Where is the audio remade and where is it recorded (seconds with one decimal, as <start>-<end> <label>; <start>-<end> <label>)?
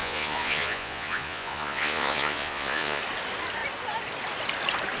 0.0-3.0 remade; 3.0-5.0 recorded